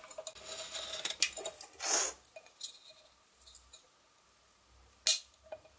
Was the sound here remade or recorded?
recorded